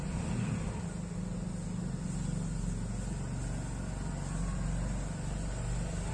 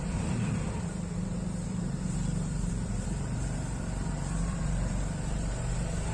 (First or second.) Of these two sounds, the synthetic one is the second